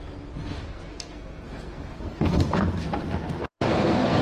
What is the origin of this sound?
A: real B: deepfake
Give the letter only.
B